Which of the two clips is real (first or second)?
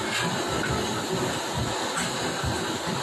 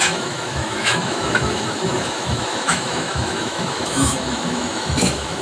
first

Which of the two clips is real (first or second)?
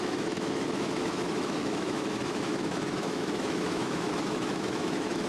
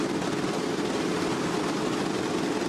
second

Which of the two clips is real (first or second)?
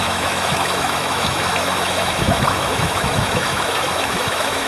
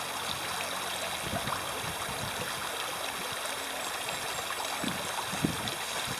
second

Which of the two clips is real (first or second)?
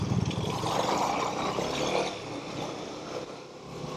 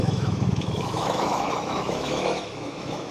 first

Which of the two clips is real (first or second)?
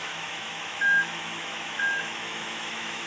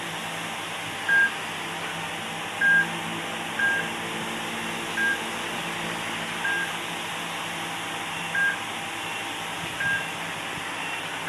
second